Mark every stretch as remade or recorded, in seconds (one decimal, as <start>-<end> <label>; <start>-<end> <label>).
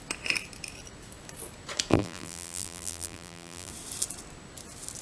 0.0-1.9 recorded; 1.9-3.7 remade; 3.7-5.0 recorded